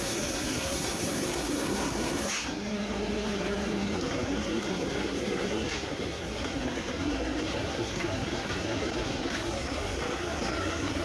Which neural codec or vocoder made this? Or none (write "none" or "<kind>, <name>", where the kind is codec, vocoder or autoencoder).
codec, SNAC